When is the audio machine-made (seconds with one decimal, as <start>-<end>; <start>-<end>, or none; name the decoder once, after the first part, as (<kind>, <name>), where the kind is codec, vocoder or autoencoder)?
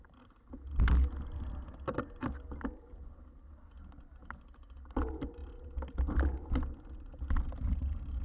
none